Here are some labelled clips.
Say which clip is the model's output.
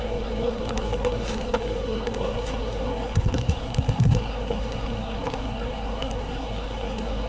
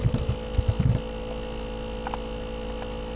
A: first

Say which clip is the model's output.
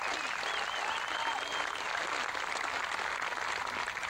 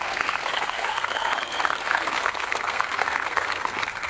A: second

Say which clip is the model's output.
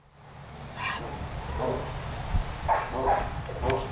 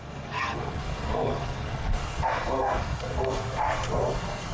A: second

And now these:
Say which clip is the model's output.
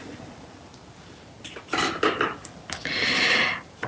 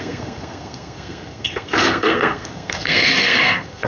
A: second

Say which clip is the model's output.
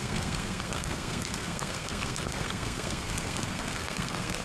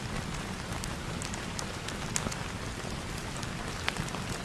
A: first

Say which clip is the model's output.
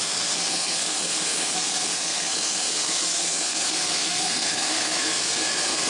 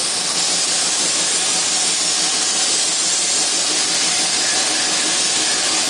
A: first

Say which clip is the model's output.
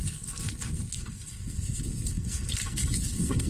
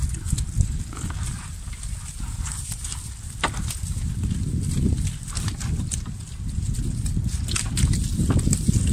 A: first